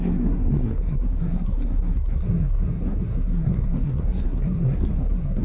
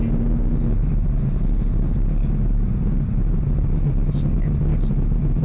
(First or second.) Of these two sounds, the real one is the second